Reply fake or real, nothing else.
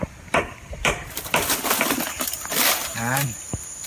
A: real